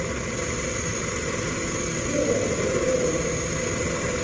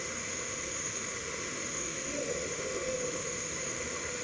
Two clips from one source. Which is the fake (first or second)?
second